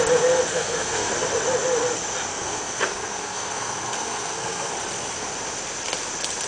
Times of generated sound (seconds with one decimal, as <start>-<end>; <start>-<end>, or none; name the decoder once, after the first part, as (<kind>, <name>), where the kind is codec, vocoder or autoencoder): 0.5-1.1 (codec, SNAC); 2.3-4.7